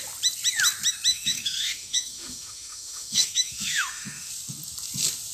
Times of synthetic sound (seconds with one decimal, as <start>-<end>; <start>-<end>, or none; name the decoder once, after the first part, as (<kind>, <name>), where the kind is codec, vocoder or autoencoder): 1.1-4.3 (autoencoder, DAC-VAE)